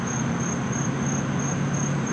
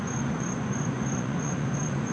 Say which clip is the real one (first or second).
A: first